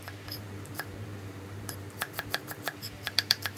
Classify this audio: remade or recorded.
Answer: remade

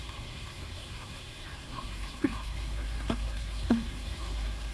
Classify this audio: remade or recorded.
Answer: remade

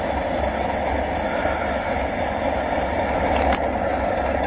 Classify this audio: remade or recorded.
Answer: recorded